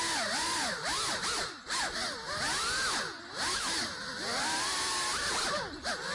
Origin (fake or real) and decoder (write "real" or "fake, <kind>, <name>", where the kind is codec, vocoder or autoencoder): real